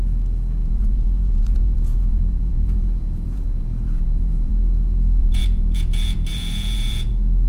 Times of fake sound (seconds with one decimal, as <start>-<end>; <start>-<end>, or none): 0.6-4.5; 5.2-7.1